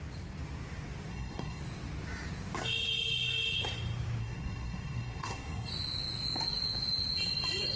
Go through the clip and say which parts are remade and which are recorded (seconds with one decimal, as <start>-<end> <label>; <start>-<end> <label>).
0.0-1.1 recorded; 1.1-1.6 remade; 1.6-4.2 recorded; 4.2-5.7 remade; 5.7-7.8 recorded